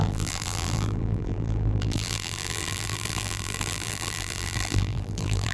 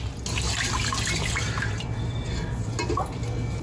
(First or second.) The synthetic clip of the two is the first